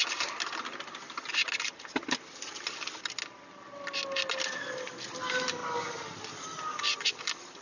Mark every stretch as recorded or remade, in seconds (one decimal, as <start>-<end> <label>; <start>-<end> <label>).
0.0-7.6 recorded